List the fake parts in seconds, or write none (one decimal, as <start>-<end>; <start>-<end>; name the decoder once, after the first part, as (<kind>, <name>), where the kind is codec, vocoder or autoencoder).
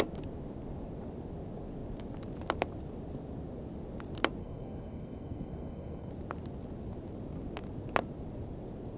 4.4-6.1 (codec, SNAC)